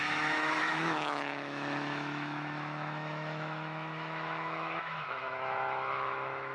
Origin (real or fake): fake